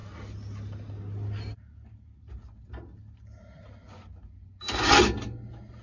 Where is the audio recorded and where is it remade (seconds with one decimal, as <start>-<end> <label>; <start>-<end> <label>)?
0.0-5.8 recorded